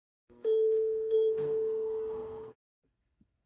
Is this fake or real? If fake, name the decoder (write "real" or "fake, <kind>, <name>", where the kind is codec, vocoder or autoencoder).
fake, codec, SNAC